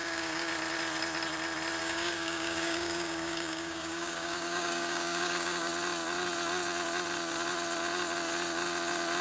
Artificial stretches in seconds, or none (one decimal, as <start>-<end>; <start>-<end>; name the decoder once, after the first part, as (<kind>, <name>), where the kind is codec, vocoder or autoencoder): 0.0-0.5 (codec, DAC); 1.8-5.7